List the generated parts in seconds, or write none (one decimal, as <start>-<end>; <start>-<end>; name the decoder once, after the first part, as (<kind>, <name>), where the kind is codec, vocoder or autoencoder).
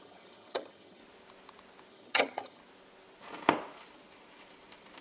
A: 0.0-1.0 (vocoder, HiFi-GAN); 1.9-2.6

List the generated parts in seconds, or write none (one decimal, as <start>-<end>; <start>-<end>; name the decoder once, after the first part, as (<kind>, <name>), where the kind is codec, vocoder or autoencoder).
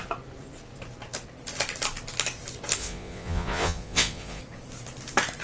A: 2.8-4.4 (vocoder, Vocos)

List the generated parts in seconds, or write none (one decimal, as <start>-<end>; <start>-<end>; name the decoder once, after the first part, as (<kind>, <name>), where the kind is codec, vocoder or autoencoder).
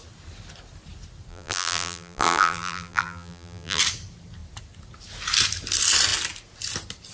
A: 1.3-3.8 (vocoder, BigVGAN v2)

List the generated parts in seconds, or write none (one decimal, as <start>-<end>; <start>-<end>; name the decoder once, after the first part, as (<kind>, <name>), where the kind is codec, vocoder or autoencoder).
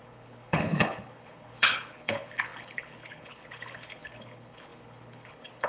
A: 0.0-5.7 (codec, HILCodec)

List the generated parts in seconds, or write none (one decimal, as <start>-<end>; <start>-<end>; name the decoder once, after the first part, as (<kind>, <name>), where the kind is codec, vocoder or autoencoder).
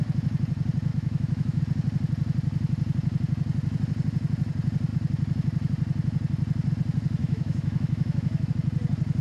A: 0.9-1.6 (autoencoder, DAC-VAE); 7.2-8.5